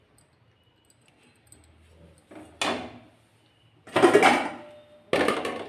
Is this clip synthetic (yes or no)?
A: no